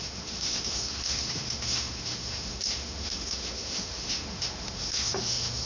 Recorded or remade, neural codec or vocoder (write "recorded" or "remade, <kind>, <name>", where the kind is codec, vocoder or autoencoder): remade, autoencoder, DAC-VAE